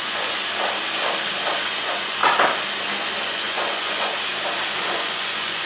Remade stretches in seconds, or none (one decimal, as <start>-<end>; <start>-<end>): 0.0-0.4; 1.6-2.2; 3.2-4.1; 4.8-5.7